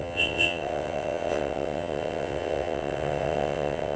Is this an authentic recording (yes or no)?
no